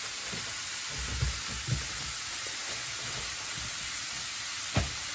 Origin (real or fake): real